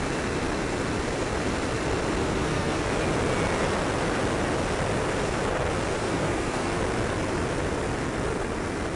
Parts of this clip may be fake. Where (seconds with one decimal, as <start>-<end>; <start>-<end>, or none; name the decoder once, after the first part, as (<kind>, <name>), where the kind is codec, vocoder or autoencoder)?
2.2-2.8 (codec, SNAC); 6.0-6.8